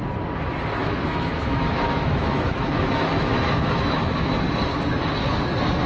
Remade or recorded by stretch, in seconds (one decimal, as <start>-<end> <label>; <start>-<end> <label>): 0.0-0.8 recorded; 0.8-4.3 remade; 4.3-5.9 recorded